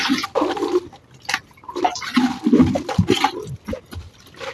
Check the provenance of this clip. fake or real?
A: real